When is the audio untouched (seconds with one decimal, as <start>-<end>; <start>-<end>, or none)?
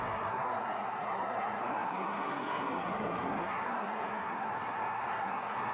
none